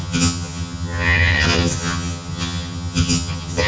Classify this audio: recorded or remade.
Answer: remade